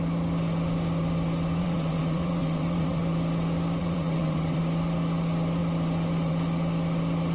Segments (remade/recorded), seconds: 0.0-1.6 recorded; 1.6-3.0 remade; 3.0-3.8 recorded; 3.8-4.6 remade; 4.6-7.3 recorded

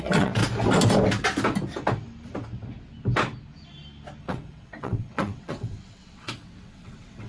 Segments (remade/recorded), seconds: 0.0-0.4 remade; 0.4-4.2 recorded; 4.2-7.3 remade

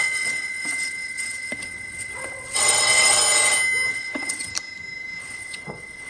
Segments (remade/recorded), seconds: 0.0-3.2 remade; 3.2-3.9 recorded; 3.9-4.5 remade; 4.5-5.2 recorded; 5.2-6.1 remade